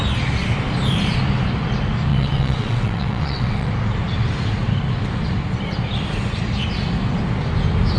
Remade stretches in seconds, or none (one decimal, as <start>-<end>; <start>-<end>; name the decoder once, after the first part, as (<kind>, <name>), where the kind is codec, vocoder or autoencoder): 2.1-3.7 (vocoder, WaveNeXt)